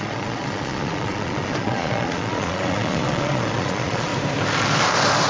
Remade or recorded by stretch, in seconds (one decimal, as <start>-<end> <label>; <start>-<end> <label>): 0.0-4.1 remade; 4.1-5.3 recorded